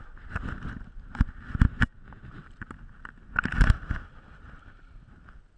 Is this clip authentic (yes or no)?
yes